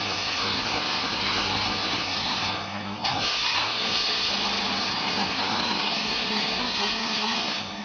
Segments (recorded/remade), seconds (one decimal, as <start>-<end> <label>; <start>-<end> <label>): 0.0-4.3 remade; 4.3-4.8 recorded; 4.8-7.8 remade